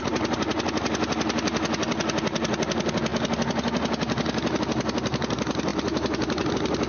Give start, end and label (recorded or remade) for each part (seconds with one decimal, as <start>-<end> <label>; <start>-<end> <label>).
0.0-6.9 recorded